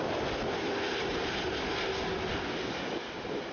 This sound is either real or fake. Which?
real